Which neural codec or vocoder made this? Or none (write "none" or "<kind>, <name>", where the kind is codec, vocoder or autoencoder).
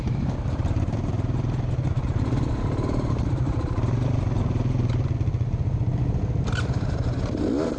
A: none